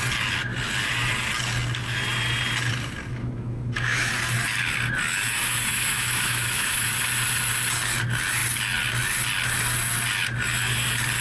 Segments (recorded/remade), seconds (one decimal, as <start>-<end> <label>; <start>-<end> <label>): 0.0-3.1 recorded; 3.1-4.1 remade; 4.1-5.7 recorded; 5.7-6.9 remade; 6.9-11.2 recorded